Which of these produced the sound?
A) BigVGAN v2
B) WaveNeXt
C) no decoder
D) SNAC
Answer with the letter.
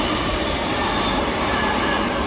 C